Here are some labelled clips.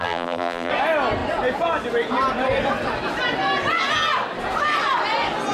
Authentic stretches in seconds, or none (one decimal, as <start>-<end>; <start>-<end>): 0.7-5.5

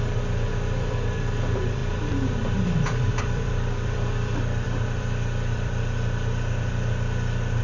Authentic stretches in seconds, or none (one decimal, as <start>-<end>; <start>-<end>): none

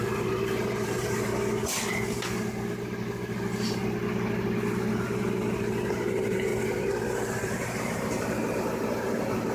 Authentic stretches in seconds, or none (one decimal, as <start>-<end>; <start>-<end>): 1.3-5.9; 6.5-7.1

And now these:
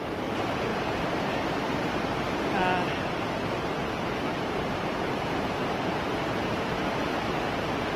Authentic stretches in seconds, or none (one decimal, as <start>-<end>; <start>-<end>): 0.0-0.7; 2.3-4.3; 6.9-8.0

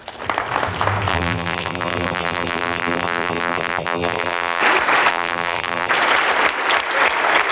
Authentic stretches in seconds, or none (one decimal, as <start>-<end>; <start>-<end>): 0.0-1.1; 4.6-5.1; 5.9-7.5

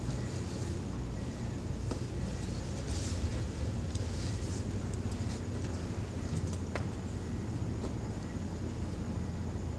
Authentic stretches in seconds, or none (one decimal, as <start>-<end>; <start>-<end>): 0.0-9.8

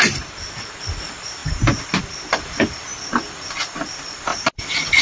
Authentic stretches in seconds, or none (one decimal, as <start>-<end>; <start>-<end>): 1.4-2.0; 2.9-3.5

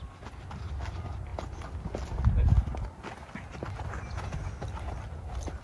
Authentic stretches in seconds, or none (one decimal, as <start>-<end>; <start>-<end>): 0.0-5.6